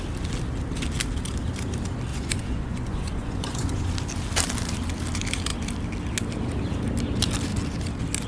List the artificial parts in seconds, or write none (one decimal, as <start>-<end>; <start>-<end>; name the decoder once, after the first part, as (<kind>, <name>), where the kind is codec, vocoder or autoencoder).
2.1-3.9 (vocoder, Vocos)